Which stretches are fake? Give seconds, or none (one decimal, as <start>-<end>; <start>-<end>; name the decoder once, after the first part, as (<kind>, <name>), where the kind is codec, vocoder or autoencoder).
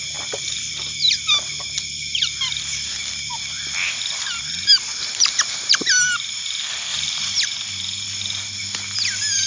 6.9-7.4 (vocoder, BigVGAN v2)